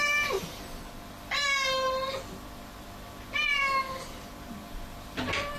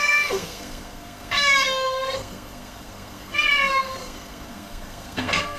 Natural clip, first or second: first